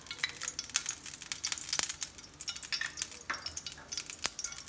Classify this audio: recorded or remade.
recorded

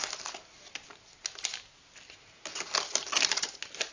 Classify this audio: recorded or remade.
recorded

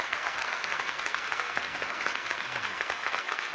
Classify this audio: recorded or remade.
remade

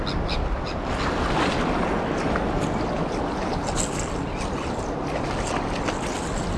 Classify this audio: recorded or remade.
recorded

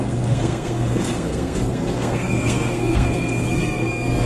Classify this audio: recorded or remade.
remade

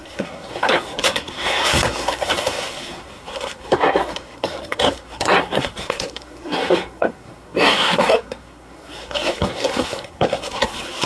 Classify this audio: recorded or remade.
remade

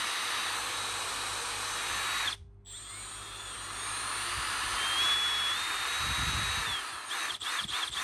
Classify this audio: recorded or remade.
recorded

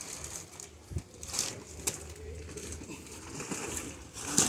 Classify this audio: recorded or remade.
recorded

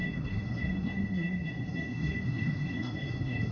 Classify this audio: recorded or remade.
remade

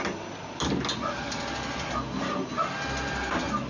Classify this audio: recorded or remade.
recorded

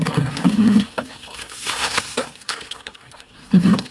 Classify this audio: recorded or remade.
remade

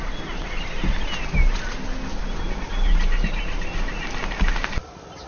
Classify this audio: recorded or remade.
recorded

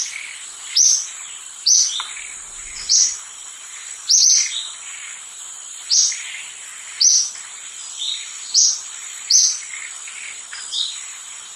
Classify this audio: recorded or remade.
recorded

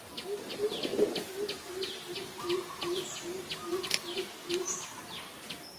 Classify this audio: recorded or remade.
recorded